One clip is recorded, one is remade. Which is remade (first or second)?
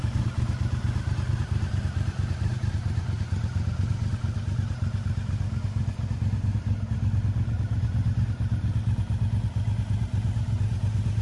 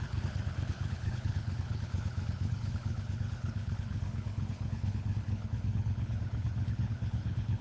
second